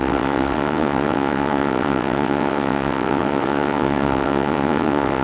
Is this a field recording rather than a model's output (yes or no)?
no